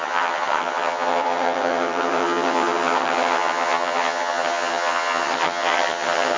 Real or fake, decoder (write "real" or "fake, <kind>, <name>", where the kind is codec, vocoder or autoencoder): fake, vocoder, HiFi-GAN